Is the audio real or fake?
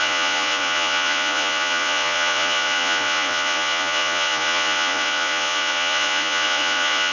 fake